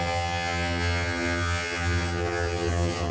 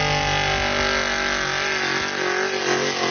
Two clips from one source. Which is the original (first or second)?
second